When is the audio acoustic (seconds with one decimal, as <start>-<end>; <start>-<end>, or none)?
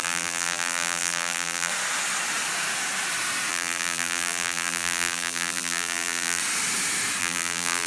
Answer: 1.7-3.5; 6.4-7.2